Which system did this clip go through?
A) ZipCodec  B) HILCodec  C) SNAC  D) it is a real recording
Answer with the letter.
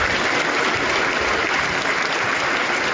D